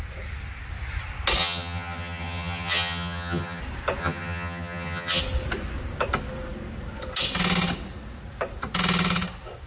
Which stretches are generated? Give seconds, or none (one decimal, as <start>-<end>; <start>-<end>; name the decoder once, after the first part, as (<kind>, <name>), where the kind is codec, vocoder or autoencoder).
1.4-3.6 (vocoder, HiFi-GAN); 4.0-5.2